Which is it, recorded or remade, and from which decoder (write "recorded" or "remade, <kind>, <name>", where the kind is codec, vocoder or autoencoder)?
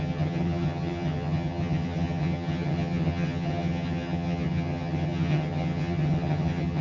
remade, vocoder, HiFi-GAN